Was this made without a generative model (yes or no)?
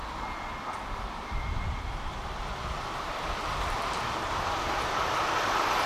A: no